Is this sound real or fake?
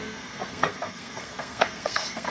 fake